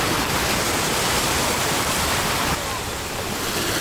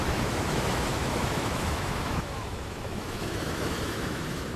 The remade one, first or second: second